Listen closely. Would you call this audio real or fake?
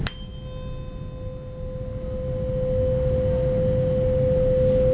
real